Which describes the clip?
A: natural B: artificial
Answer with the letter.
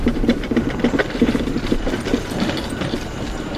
B